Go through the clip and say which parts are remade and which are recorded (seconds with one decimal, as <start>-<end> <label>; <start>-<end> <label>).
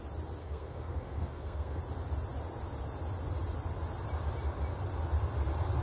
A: 0.0-0.4 recorded; 0.4-1.8 remade; 1.8-5.8 recorded